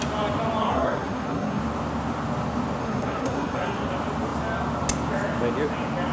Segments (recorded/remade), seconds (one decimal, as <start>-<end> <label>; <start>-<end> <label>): 0.0-0.6 recorded; 0.6-1.6 remade; 1.6-2.8 recorded; 2.8-3.9 remade; 3.9-6.1 recorded